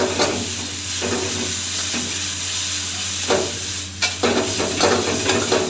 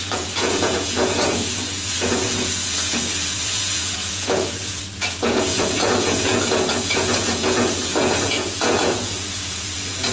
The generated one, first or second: second